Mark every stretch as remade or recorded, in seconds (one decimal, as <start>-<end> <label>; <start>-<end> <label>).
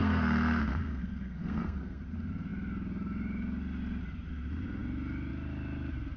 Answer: 0.0-2.0 remade; 2.0-6.2 recorded